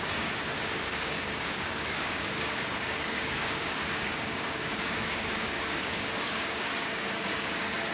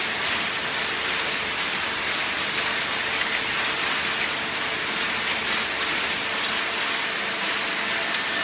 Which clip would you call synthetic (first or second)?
first